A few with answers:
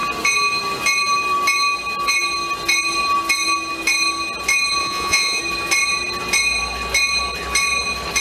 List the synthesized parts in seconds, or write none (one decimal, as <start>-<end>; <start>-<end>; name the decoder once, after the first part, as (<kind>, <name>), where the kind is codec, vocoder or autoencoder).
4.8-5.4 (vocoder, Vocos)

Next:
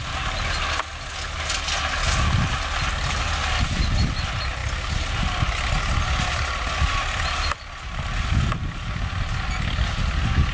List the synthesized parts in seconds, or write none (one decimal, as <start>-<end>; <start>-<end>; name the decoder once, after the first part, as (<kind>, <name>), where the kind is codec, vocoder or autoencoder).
none

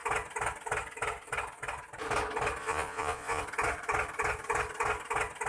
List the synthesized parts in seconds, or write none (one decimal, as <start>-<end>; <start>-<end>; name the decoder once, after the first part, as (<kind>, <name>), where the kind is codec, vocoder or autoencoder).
2.6-3.4 (vocoder, Vocos)

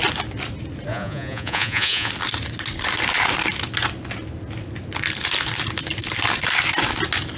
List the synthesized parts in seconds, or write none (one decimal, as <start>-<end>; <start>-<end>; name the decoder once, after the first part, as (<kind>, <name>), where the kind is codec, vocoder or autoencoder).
0.9-2.1 (vocoder, Vocos)

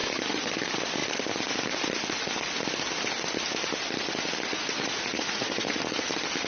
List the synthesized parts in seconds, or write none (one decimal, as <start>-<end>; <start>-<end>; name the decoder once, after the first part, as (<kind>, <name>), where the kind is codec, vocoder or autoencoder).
0.0-0.5 (vocoder, Vocos); 4.5-5.8